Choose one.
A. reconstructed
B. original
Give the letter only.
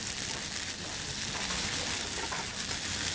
B